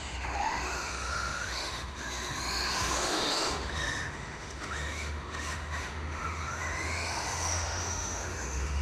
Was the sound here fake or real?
fake